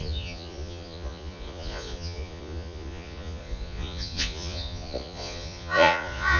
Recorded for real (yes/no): no